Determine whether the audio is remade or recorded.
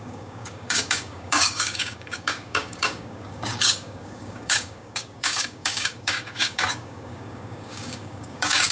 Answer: remade